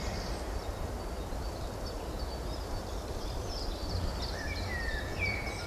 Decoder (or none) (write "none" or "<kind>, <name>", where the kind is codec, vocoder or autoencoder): none